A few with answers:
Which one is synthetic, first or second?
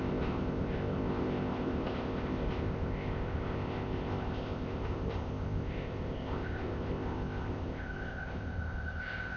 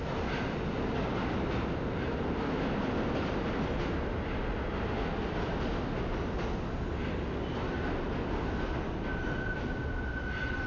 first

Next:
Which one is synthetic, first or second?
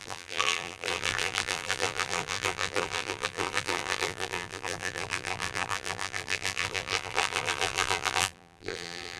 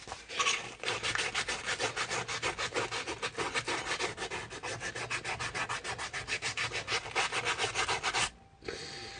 first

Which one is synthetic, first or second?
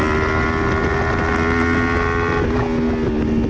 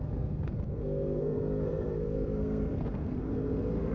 second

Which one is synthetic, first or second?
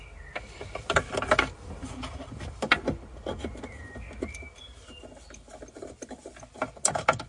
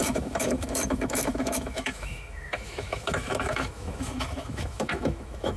second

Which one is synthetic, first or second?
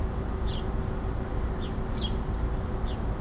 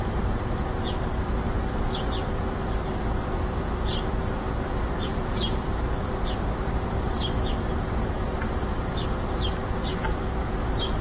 second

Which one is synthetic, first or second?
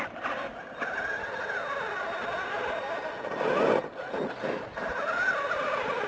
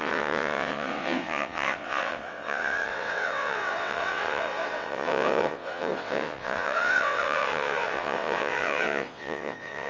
second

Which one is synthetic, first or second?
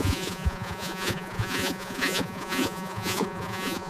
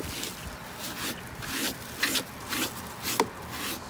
first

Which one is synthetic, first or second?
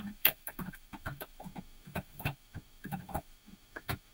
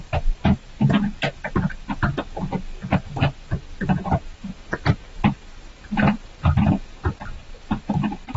first